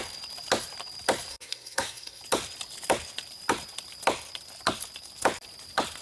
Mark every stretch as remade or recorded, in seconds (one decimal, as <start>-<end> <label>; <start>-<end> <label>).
0.0-1.3 recorded; 1.3-2.2 remade; 2.2-6.0 recorded